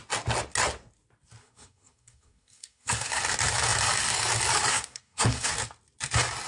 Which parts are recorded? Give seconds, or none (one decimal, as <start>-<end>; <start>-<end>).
0.0-1.4; 3.2-4.7; 5.5-6.5